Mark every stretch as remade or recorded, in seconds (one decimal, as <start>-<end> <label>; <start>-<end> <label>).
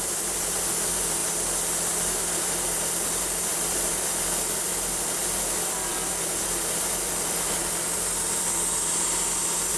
0.0-1.2 remade; 1.2-2.0 recorded; 2.0-9.8 remade